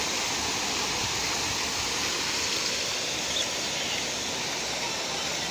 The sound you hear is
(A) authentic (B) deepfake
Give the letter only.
A